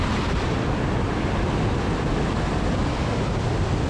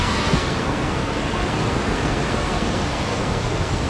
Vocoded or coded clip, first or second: second